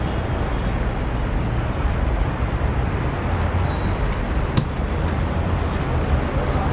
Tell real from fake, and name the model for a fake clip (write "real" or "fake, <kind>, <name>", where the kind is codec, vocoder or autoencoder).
real